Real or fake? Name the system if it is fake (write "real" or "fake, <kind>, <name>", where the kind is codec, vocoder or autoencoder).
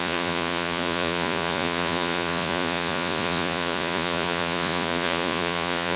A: fake, vocoder, Vocos